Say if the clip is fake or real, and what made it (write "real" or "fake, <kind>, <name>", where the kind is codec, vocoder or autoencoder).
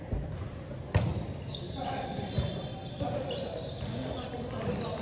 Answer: real